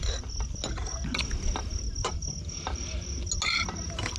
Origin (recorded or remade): recorded